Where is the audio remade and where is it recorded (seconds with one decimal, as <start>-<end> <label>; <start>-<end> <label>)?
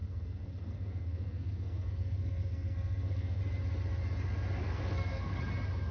0.0-3.4 remade; 3.4-4.6 recorded; 4.6-5.4 remade; 5.4-5.9 recorded